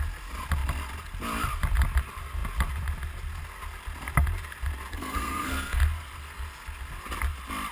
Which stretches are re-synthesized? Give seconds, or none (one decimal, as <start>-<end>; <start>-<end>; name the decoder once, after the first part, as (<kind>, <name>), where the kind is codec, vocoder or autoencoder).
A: 4.9-5.8 (codec, SNAC)